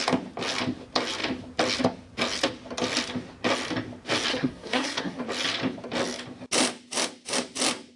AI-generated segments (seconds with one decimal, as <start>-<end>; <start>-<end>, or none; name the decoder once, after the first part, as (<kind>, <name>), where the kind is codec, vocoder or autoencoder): 4.3-5.2 (codec, SNAC)

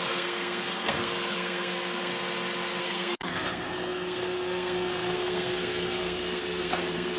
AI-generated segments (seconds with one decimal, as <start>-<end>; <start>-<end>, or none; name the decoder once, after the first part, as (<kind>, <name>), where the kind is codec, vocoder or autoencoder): 0.0-2.1 (codec, SNAC); 2.8-7.2

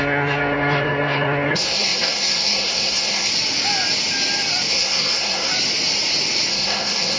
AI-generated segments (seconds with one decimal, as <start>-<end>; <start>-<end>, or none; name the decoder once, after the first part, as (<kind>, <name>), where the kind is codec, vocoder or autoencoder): 0.0-3.3 (codec, SNAC); 4.7-5.5; 6.5-7.2

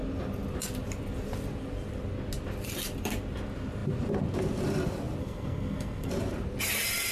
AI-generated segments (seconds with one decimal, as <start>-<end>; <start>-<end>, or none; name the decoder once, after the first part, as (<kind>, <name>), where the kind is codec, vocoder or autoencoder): 5.2-6.1 (codec, SNAC)

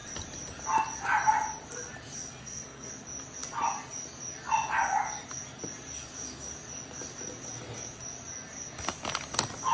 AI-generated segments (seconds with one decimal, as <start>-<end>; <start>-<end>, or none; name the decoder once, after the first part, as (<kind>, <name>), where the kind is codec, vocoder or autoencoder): 2.4-2.9 (codec, SNAC)

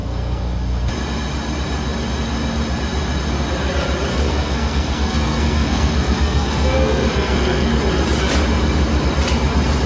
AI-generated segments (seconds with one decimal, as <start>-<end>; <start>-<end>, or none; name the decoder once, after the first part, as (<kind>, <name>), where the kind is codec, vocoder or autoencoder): 0.0-0.9 (codec, SNAC); 4.1-7.7